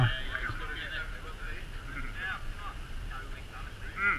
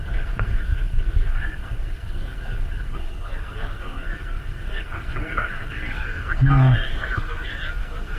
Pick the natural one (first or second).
first